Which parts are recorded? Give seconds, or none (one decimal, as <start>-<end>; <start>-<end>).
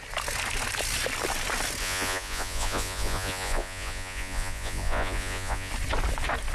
0.0-1.8; 5.7-6.5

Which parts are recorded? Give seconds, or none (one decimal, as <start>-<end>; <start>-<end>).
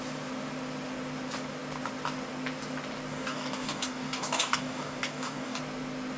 0.0-3.1; 5.6-6.2